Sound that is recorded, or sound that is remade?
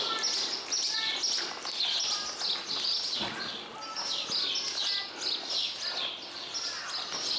recorded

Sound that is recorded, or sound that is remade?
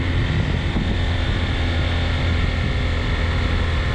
recorded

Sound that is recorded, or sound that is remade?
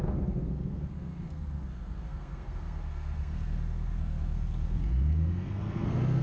remade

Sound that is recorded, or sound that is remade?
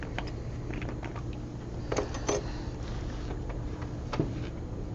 recorded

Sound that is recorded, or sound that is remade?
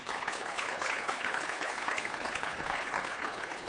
remade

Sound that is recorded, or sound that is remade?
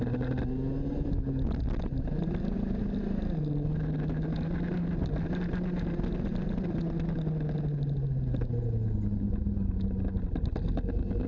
recorded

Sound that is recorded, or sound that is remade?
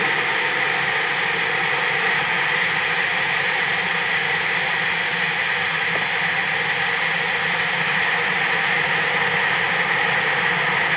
recorded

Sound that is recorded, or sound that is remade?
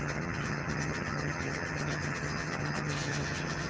remade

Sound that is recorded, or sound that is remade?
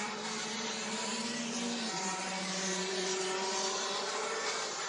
remade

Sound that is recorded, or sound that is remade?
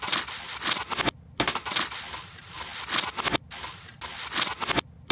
recorded